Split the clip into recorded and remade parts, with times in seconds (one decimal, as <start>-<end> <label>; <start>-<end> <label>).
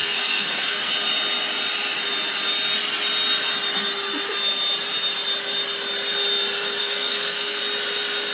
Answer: 0.0-0.9 remade; 0.9-6.8 recorded; 6.8-7.6 remade; 7.6-8.3 recorded